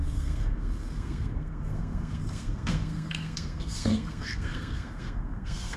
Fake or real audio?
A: fake